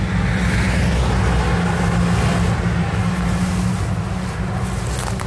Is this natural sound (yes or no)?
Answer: yes